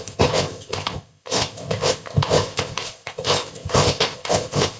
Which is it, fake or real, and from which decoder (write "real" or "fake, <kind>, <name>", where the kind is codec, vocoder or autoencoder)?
fake, codec, ZipCodec